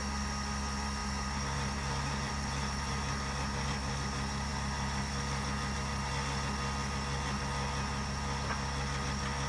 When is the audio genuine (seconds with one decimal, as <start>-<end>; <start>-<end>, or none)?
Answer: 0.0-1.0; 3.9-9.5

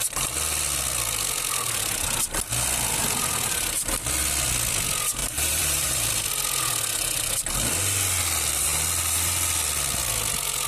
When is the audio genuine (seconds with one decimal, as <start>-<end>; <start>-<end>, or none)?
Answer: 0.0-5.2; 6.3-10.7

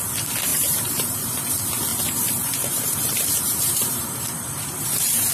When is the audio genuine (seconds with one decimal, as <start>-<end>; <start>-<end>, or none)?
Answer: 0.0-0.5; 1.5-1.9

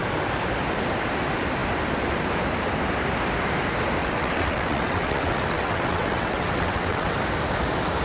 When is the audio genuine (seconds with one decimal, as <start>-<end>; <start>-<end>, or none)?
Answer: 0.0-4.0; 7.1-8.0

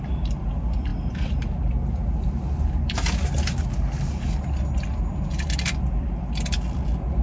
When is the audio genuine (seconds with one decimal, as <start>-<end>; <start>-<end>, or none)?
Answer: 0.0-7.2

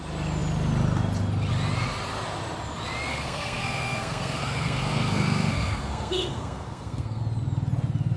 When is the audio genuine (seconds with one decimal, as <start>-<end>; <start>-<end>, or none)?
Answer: 0.0-3.1; 7.2-8.2